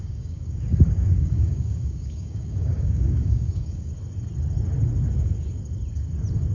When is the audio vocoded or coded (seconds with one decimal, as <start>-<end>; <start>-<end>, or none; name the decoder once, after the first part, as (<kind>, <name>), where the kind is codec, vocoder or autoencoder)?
0.0-3.9 (codec, DAC)